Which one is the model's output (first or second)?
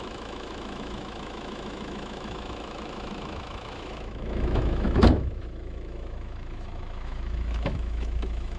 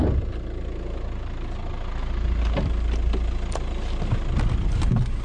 first